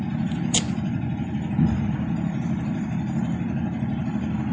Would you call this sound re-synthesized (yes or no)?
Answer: yes